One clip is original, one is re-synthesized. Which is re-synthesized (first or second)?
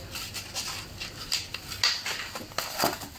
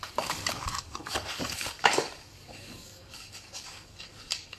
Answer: second